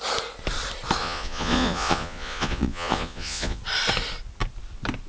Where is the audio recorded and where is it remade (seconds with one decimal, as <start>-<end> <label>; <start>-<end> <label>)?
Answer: 0.0-1.0 recorded; 1.0-3.6 remade; 3.6-5.1 recorded

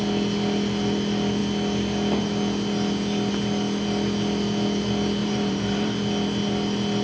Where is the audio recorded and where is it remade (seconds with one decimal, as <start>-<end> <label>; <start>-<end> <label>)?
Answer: 0.0-5.2 recorded; 5.2-5.9 remade; 5.9-7.0 recorded

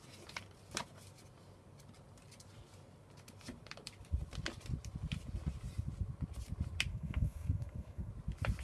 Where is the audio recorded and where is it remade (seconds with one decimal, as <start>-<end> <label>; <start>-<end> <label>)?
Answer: 0.0-6.9 recorded; 6.9-8.1 remade; 8.1-8.6 recorded

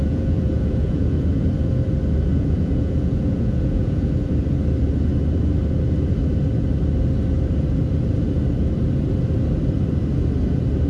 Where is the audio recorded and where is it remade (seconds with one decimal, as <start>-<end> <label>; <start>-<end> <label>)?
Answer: 0.0-1.5 remade; 1.5-2.3 recorded; 2.3-4.1 remade; 4.1-10.9 recorded

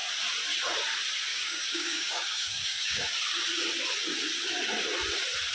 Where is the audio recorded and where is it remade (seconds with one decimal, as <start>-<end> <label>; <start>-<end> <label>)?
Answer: 0.0-1.3 recorded; 1.3-3.1 remade; 3.1-5.5 recorded